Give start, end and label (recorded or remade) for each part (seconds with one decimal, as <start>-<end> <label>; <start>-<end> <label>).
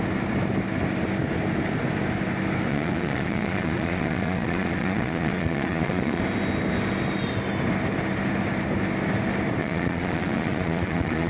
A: 0.0-2.7 recorded; 2.7-6.2 remade; 6.2-9.6 recorded; 9.6-11.3 remade